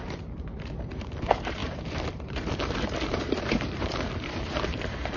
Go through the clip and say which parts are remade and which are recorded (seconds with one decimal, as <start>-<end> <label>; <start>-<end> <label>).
0.0-5.2 remade